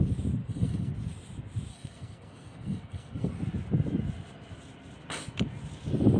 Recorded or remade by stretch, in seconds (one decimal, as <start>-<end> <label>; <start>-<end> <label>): 0.0-0.4 recorded; 0.4-0.9 remade; 0.9-1.7 recorded; 1.7-3.3 remade; 3.3-6.2 recorded